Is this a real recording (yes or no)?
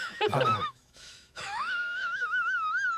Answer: no